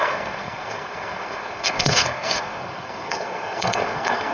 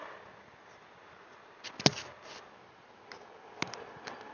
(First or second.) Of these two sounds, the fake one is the first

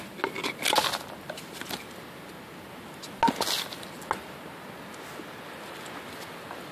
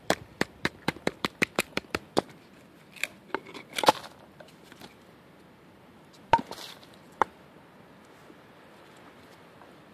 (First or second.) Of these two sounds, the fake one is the second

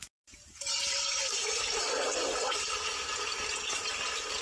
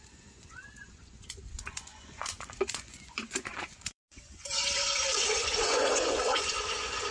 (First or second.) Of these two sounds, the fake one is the second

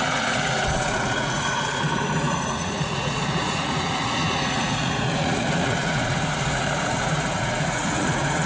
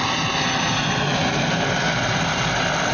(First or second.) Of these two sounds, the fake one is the first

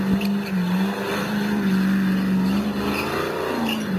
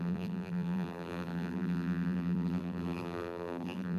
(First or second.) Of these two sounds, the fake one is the second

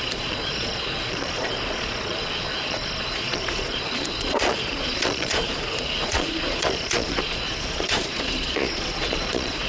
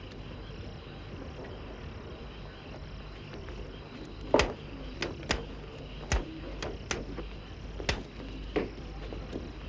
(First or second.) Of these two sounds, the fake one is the first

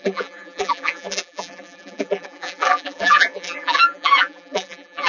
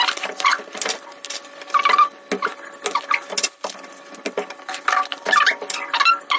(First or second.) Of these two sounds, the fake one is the first